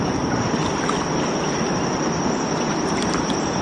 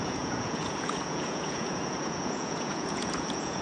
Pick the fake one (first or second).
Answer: second